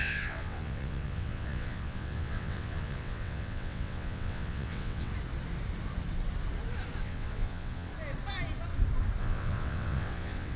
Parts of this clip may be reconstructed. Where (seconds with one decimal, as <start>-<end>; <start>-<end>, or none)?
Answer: 0.0-5.1; 7.0-7.9; 9.2-10.6